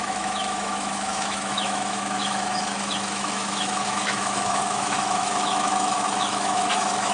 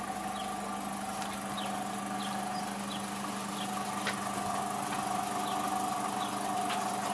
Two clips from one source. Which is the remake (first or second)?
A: first